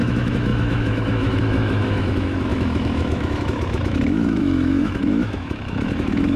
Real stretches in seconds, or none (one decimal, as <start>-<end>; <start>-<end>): none